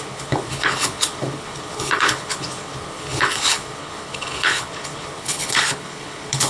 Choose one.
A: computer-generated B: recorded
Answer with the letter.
A